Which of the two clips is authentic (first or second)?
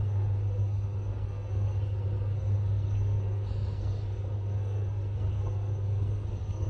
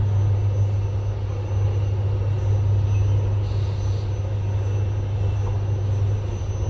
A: second